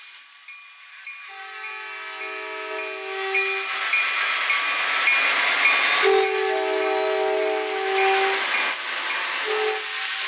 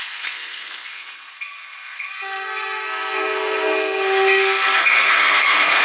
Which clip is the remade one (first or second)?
second